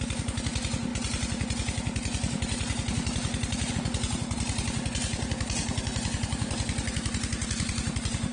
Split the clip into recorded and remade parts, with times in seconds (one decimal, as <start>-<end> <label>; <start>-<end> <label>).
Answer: 0.0-8.3 recorded